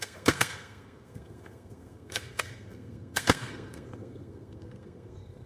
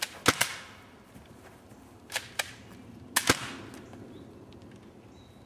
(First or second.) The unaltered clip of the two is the second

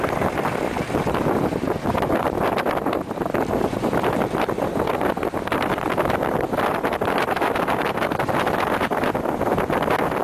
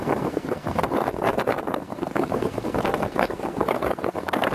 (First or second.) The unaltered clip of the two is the first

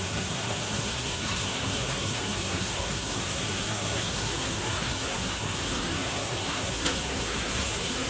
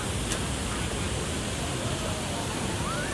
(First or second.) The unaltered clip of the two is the second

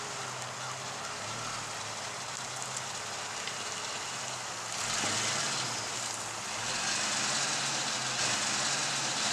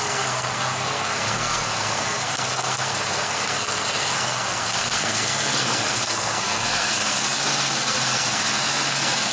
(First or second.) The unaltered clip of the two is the first